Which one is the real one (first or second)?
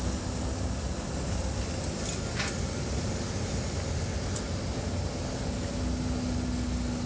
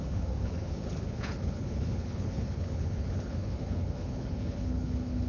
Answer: first